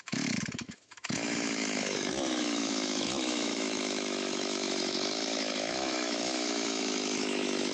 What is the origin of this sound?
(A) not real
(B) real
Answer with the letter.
A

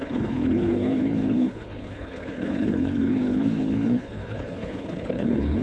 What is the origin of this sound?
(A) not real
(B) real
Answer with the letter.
A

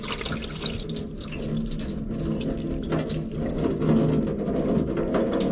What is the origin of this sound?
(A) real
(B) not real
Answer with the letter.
A